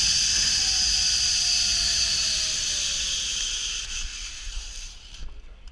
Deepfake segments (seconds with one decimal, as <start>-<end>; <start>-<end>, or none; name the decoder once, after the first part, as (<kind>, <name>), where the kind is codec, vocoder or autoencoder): 4.1-5.2 (vocoder, BigVGAN v2)